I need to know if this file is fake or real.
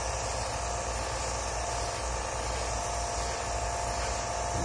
real